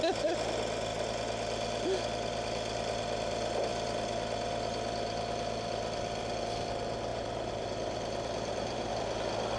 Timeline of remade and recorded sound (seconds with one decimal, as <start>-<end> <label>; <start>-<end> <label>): 0.0-7.1 recorded; 7.1-8.9 remade; 8.9-9.6 recorded